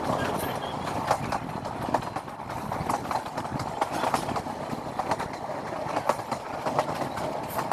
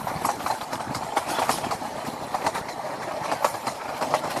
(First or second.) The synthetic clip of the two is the second